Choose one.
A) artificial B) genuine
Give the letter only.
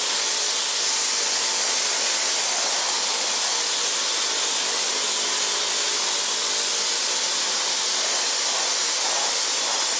B